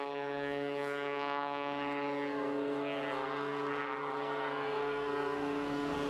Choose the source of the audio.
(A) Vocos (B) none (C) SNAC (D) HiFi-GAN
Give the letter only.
C